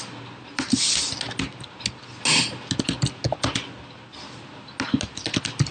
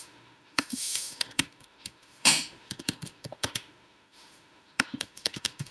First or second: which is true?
first